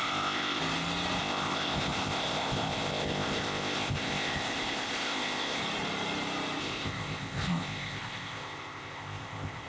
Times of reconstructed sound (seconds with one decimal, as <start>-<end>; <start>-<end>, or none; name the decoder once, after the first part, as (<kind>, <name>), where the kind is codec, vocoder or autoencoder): 0.0-0.6 (codec, ZipCodec); 1.2-5.6; 6.6-9.7